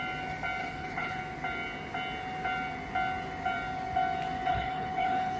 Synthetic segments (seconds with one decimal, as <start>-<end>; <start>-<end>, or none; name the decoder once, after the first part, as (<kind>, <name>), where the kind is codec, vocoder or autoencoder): 0.6-1.2 (codec, HILCodec); 4.5-5.4